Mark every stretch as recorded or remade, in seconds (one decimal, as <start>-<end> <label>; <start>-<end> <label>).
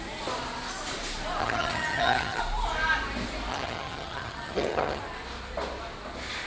0.0-1.4 recorded; 1.4-2.4 remade; 2.4-3.5 recorded; 3.5-5.0 remade; 5.0-6.5 recorded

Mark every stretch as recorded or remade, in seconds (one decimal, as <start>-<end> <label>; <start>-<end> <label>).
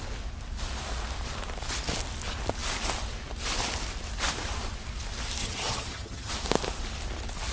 0.0-5.4 recorded; 5.4-6.3 remade; 6.3-7.5 recorded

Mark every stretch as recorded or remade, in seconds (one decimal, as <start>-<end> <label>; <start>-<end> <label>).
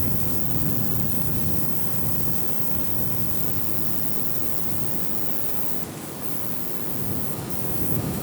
0.0-0.4 remade; 0.4-1.1 recorded; 1.1-3.4 remade; 3.4-7.3 recorded; 7.3-8.2 remade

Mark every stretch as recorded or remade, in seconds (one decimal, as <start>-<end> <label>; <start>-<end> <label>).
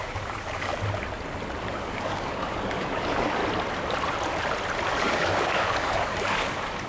0.0-0.7 remade; 0.7-1.7 recorded; 1.7-3.4 remade; 3.4-5.0 recorded; 5.0-6.9 remade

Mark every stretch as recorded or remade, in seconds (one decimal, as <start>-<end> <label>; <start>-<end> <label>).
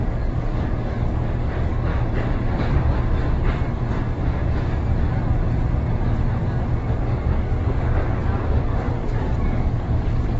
0.0-1.9 remade; 1.9-6.9 recorded; 6.9-10.4 remade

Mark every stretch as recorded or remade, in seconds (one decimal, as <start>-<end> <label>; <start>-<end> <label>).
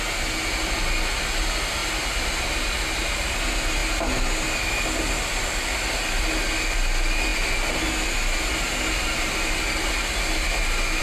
0.0-11.0 recorded